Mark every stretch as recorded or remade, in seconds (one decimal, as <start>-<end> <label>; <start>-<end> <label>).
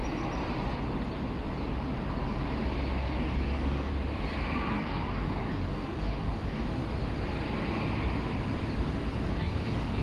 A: 0.0-3.0 recorded; 3.0-3.9 remade; 3.9-4.7 recorded; 4.7-6.8 remade; 6.8-9.3 recorded; 9.3-10.0 remade